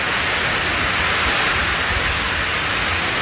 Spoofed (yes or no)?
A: no